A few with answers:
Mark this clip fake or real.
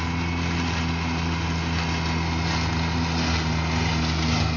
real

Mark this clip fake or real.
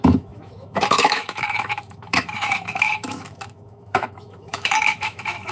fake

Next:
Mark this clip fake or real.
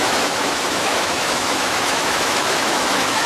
fake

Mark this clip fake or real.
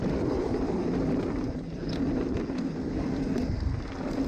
real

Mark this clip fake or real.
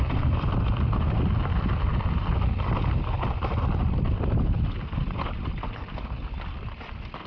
real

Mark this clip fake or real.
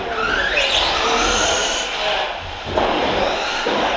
real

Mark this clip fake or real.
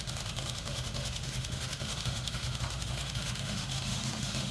fake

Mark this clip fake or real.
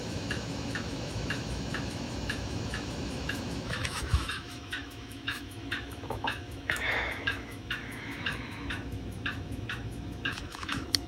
fake